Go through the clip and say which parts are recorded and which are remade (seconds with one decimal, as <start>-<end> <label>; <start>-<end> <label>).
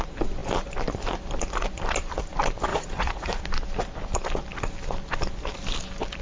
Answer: 0.0-2.7 recorded; 2.7-3.4 remade; 3.4-6.2 recorded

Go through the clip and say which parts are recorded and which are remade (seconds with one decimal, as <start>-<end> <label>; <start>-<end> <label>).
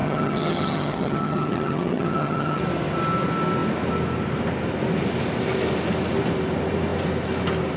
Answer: 0.0-2.6 remade; 2.6-7.8 recorded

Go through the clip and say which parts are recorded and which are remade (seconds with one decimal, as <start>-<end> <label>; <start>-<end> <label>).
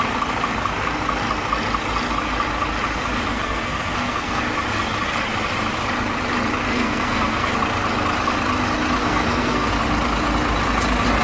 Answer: 0.0-3.3 recorded; 3.3-4.4 remade; 4.4-6.6 recorded; 6.6-7.5 remade; 7.5-9.0 recorded; 9.0-9.7 remade; 9.7-11.2 recorded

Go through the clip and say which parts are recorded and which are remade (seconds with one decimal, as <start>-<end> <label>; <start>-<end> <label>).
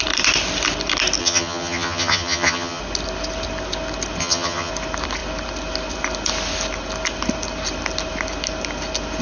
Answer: 0.0-1.2 recorded; 1.2-2.8 remade; 2.8-4.2 recorded; 4.2-4.7 remade; 4.7-9.2 recorded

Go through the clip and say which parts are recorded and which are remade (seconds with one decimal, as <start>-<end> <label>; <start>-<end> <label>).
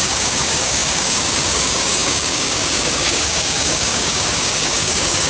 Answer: 0.0-5.3 remade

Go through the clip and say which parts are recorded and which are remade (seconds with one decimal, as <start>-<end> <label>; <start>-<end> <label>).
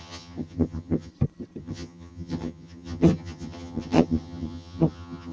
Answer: 0.0-1.1 remade; 1.1-1.6 recorded; 1.6-5.3 remade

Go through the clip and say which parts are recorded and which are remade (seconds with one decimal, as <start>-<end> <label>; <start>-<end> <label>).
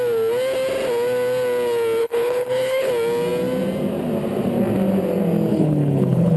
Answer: 0.0-2.0 recorded; 2.0-2.9 remade; 2.9-5.5 recorded; 5.5-6.4 remade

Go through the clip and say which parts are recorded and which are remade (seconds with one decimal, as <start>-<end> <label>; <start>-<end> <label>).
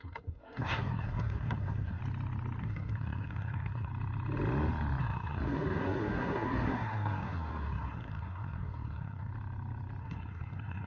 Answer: 0.0-2.0 remade; 2.0-2.6 recorded; 2.6-3.9 remade; 3.9-5.0 recorded; 5.0-9.3 remade; 9.3-10.0 recorded; 10.0-10.9 remade